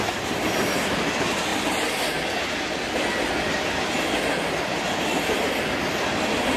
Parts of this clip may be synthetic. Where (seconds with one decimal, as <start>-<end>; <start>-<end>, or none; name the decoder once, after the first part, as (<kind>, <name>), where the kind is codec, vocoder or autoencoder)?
none